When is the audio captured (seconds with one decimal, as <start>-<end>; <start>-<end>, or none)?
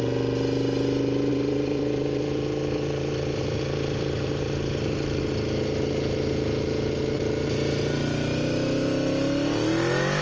0.0-1.3; 5.2-10.2